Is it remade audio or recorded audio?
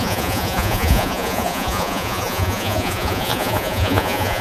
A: remade